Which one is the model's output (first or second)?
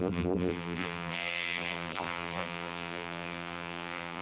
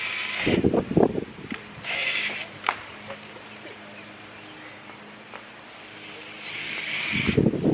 first